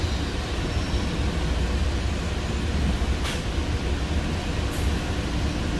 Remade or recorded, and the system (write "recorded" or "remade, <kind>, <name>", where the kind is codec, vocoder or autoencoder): recorded